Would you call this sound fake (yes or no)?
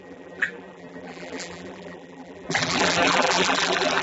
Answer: yes